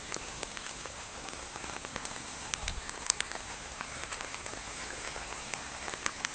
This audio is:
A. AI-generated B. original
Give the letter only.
A